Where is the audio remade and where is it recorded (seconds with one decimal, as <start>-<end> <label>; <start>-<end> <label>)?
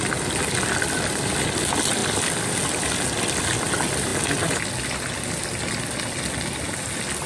0.0-7.3 recorded